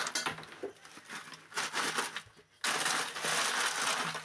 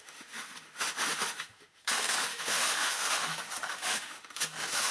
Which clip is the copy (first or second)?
second